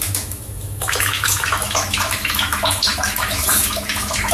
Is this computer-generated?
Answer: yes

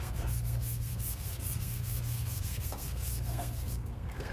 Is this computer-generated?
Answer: yes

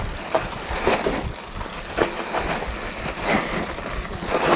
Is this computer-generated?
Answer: no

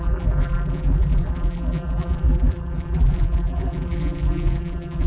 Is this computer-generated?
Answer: yes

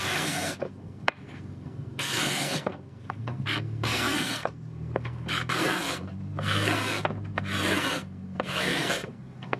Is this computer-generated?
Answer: yes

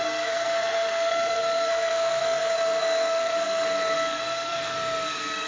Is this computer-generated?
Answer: yes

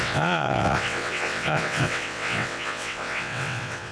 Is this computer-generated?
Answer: yes